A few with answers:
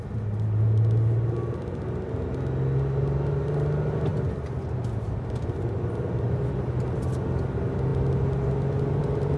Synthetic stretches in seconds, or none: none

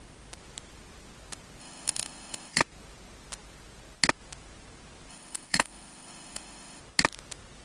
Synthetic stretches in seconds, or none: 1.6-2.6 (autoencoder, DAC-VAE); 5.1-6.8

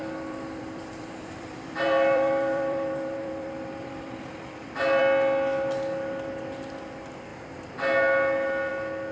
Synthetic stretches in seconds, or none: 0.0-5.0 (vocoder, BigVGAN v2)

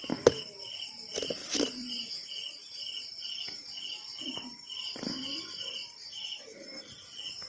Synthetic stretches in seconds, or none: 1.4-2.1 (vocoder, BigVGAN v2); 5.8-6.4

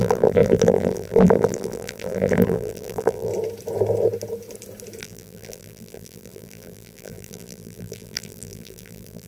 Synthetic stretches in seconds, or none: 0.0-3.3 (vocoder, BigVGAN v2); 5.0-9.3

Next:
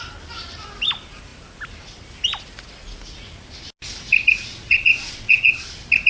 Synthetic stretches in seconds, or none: 4.5-5.5 (vocoder, Vocos)